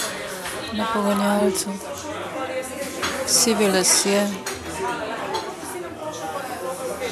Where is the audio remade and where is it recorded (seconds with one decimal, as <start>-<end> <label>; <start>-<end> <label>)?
0.0-7.1 recorded